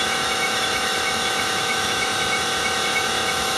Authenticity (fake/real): fake